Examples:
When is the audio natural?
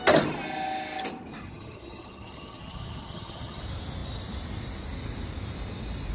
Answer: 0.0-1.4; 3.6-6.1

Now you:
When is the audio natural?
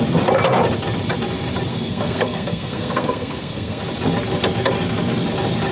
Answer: 0.0-1.7; 3.8-5.7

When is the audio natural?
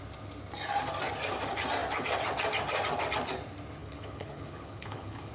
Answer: 0.0-3.8